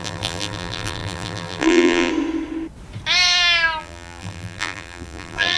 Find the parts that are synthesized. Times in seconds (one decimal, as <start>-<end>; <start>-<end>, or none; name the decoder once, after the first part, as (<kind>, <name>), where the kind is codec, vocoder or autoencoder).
0.0-2.1 (vocoder, BigVGAN v2); 3.8-5.6